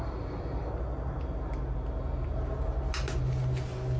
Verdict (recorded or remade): recorded